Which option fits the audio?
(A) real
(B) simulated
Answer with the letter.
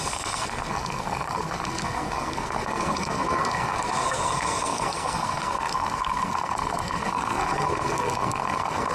B